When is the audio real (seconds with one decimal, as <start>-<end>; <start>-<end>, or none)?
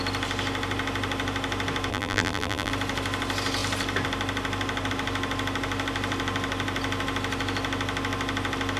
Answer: 0.0-1.9; 2.7-8.8